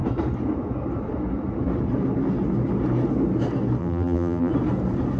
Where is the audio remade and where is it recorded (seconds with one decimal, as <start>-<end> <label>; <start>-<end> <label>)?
0.0-3.8 recorded; 3.8-4.5 remade; 4.5-5.2 recorded